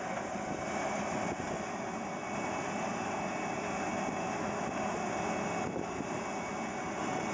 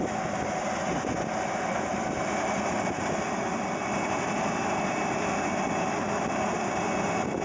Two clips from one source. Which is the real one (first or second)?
first